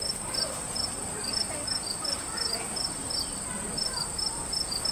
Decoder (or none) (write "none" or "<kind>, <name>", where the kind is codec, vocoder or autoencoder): vocoder, BigVGAN v2